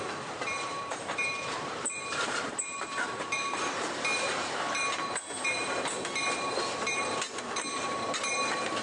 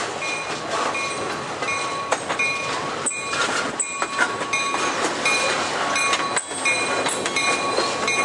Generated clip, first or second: first